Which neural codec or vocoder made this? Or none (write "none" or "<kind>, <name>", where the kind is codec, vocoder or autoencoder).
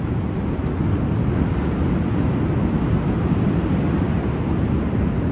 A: none